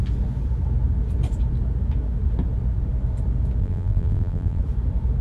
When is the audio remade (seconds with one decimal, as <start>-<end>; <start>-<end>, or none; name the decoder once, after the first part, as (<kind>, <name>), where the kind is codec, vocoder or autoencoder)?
3.6-4.6 (vocoder, BigVGAN v2)